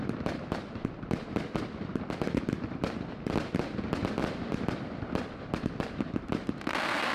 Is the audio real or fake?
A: fake